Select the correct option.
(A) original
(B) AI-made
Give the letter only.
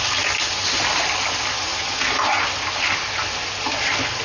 A